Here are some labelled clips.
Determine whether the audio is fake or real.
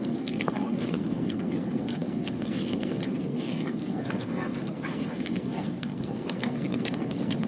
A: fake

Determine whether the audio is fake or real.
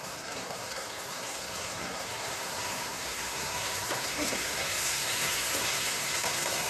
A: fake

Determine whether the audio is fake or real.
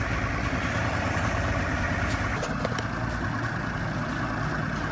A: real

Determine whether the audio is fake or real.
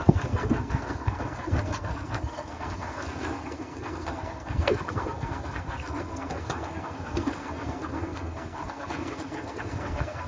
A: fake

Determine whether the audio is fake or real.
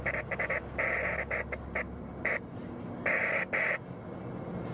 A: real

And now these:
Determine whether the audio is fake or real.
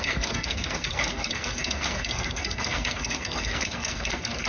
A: fake